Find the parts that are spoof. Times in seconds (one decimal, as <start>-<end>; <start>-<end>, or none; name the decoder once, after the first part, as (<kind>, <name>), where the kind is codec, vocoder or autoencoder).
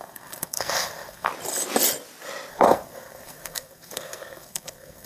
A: 0.0-1.3 (codec, SNAC); 2.5-5.1